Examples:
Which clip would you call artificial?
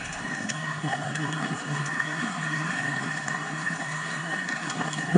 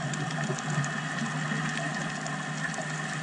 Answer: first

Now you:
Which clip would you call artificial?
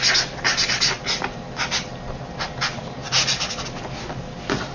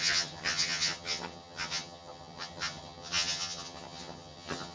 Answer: second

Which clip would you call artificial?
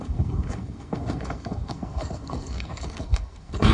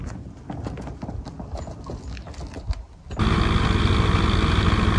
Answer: first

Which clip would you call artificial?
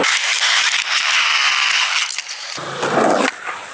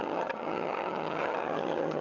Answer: second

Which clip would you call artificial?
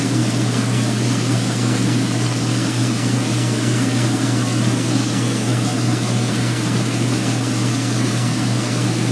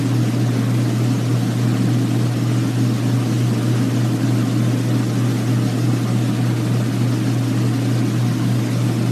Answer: first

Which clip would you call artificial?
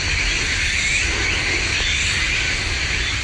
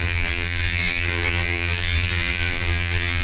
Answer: second